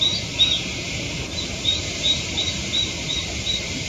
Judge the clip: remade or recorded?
recorded